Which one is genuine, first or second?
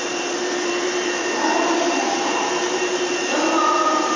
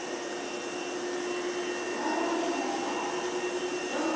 second